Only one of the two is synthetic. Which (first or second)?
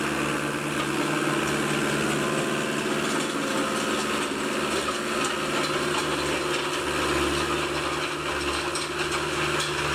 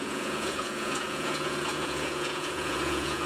second